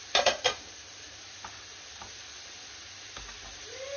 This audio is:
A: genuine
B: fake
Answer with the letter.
A